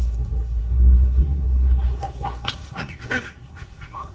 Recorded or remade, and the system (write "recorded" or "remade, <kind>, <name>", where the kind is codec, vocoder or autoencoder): remade, codec, SNAC